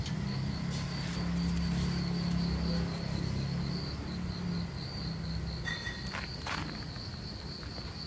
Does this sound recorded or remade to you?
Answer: recorded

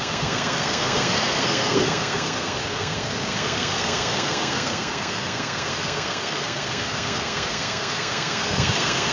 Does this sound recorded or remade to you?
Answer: remade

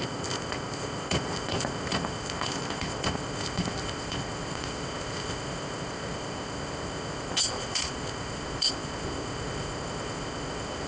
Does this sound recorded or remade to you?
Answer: remade